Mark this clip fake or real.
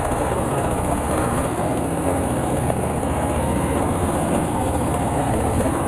fake